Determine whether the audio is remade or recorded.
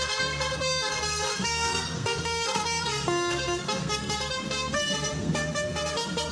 remade